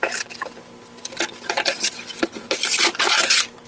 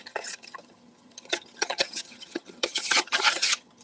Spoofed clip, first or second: second